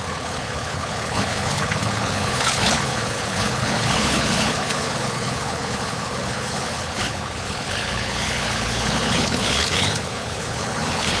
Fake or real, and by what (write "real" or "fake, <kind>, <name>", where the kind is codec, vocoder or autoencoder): fake, codec, HILCodec